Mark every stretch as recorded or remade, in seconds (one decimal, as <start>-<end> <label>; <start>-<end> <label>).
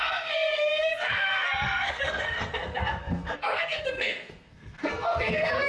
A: 0.0-5.7 remade